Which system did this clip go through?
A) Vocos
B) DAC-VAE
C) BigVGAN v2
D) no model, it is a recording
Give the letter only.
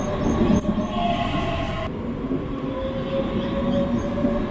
D